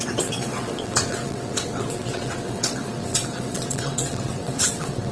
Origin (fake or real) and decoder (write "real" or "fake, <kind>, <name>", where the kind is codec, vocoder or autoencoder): fake, vocoder, WaveNeXt